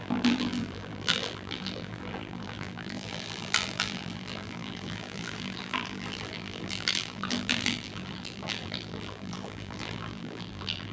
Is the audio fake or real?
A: fake